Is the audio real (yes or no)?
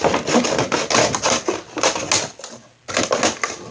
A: yes